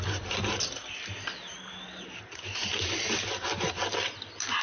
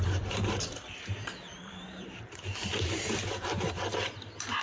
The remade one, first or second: second